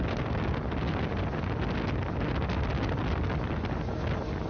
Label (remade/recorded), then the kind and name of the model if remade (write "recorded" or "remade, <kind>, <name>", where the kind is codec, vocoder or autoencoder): recorded